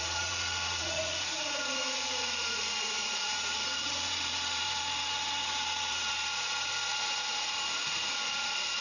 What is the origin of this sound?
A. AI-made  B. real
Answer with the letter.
A